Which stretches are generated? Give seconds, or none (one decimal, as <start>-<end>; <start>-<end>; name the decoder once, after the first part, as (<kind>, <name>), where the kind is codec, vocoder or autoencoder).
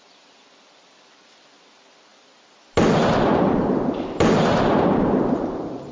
none